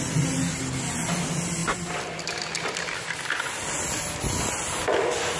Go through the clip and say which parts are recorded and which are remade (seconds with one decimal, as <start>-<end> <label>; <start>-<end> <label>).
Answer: 0.0-5.4 recorded